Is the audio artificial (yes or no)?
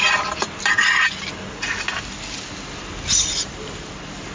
no